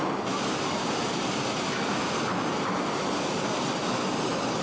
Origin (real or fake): real